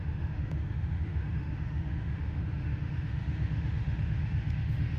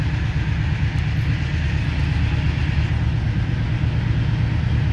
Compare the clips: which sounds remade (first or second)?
first